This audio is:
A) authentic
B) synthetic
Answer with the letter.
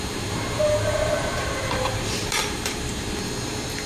B